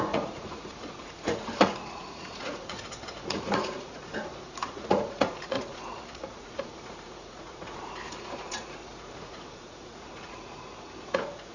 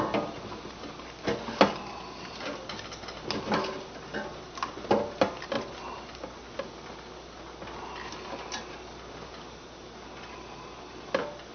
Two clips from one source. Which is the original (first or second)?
second